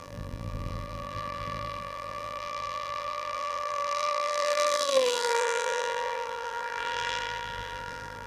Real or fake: fake